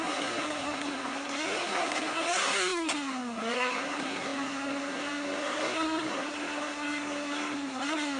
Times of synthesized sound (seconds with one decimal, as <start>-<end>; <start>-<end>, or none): 0.0-8.2